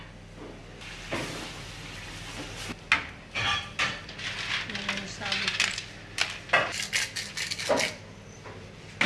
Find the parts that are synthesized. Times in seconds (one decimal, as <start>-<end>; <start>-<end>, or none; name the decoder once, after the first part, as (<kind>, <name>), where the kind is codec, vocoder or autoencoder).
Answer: none